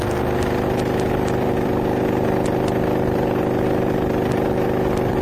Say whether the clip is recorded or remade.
recorded